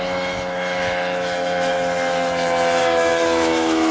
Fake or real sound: fake